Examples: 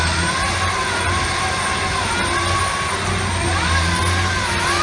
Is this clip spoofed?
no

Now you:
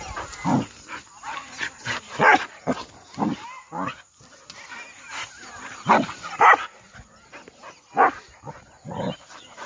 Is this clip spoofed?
no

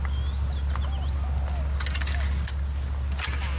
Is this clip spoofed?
no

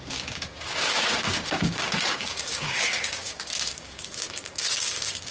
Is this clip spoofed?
yes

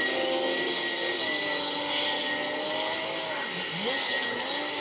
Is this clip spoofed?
no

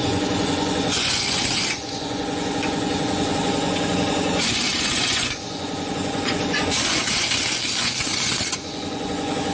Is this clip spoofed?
yes